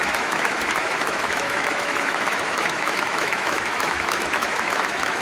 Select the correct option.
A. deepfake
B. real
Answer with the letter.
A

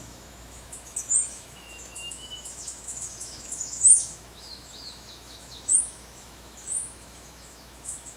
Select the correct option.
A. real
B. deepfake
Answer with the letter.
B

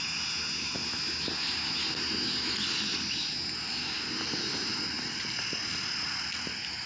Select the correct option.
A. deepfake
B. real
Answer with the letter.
B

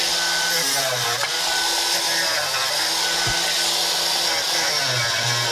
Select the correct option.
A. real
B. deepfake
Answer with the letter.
A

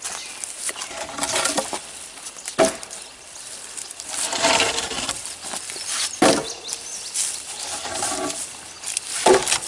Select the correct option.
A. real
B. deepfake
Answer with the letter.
A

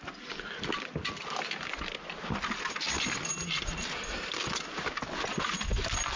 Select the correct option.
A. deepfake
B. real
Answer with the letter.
B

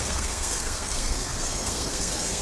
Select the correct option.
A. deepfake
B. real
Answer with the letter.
A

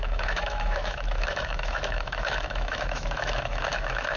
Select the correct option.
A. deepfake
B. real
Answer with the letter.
A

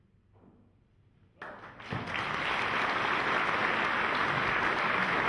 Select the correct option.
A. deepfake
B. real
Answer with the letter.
B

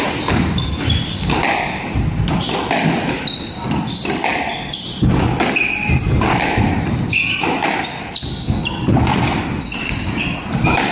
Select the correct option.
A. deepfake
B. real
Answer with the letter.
B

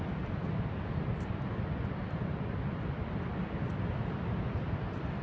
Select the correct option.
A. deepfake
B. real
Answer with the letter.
B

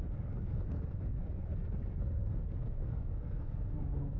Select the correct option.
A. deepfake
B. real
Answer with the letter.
A